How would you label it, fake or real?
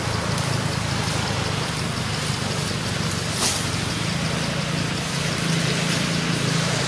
real